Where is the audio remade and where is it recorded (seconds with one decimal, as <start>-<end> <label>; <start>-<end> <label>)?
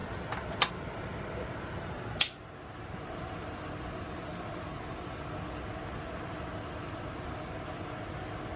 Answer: 0.0-8.6 recorded